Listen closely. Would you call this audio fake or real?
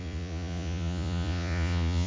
fake